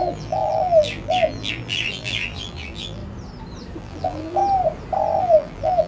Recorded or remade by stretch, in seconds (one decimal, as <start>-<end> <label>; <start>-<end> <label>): 0.0-3.0 remade; 3.0-3.8 recorded; 3.8-4.4 remade; 4.4-5.2 recorded; 5.2-5.9 remade